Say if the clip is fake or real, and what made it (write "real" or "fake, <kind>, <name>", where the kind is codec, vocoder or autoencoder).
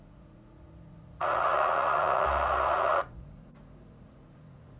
fake, vocoder, Vocos